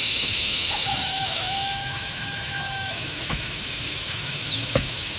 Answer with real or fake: fake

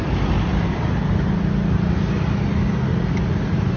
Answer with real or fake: real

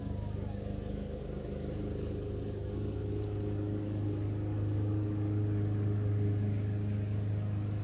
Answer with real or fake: fake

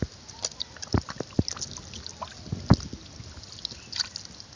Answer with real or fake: real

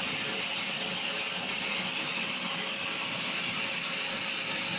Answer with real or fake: real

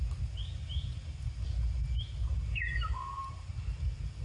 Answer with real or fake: real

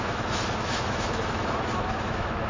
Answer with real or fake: fake